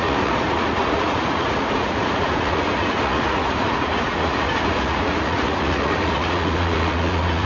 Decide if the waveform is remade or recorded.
remade